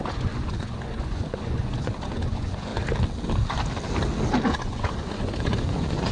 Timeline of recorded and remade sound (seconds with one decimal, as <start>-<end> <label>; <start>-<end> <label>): 0.0-2.7 remade; 2.7-4.5 recorded; 4.5-6.1 remade